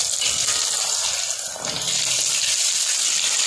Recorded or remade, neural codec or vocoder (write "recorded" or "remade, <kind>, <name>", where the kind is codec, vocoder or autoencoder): recorded